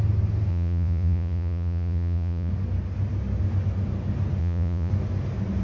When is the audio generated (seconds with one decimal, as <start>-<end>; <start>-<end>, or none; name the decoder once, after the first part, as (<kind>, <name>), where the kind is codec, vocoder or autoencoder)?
0.5-2.5 (vocoder, Vocos); 4.4-4.9